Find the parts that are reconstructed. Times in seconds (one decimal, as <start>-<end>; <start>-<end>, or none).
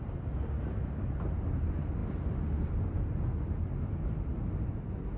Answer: none